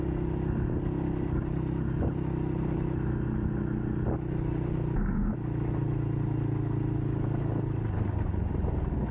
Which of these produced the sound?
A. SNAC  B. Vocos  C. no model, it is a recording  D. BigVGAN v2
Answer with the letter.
C